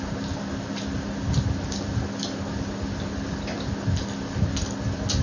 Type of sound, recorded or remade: recorded